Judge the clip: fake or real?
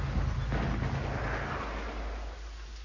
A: real